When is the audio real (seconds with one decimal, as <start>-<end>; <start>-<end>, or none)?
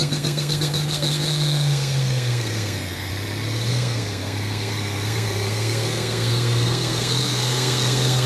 3.1-3.7